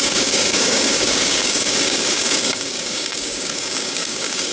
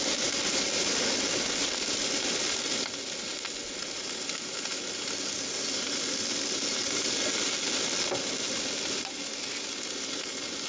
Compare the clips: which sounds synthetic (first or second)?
first